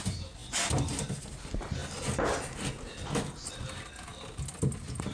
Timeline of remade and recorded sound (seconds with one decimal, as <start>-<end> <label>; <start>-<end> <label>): 0.0-5.1 recorded